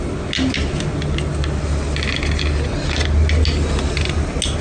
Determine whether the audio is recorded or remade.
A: recorded